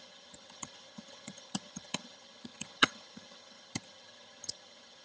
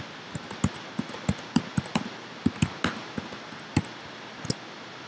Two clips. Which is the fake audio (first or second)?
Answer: first